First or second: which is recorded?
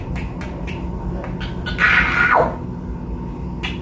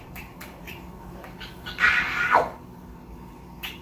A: first